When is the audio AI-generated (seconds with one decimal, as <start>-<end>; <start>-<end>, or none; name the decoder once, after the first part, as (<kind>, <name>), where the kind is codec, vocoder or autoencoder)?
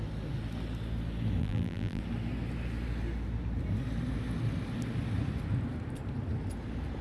1.4-2.0 (vocoder, BigVGAN v2)